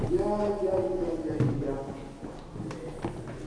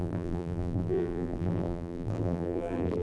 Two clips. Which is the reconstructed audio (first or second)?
second